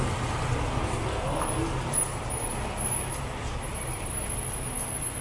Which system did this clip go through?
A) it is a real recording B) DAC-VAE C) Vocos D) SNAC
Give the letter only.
A